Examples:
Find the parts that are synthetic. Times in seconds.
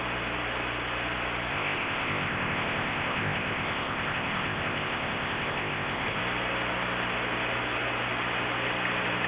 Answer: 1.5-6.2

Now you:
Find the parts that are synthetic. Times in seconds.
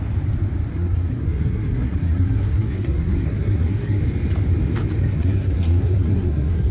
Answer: 0.7-4.0; 5.0-6.7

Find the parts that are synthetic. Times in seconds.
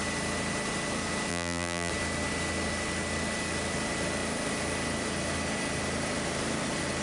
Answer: 1.3-1.9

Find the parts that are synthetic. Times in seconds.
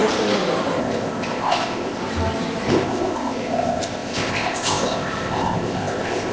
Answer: 0.8-2.0; 2.7-6.3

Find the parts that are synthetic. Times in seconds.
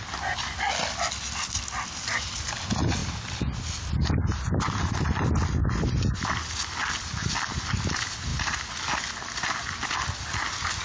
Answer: none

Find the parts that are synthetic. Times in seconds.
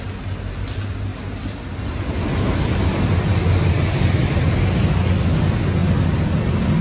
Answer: none